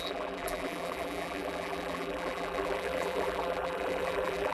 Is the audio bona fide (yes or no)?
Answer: no